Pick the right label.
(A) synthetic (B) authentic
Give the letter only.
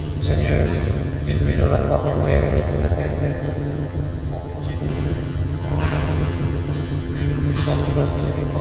A